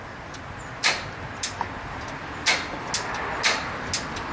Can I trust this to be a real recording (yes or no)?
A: yes